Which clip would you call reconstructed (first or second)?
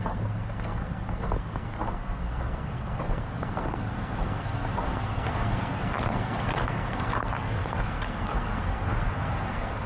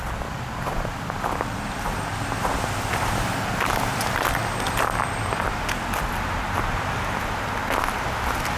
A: first